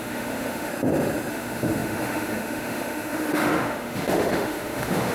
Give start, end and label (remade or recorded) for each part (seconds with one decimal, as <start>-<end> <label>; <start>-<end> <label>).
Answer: 0.0-0.7 remade; 0.7-1.3 recorded; 1.3-5.1 remade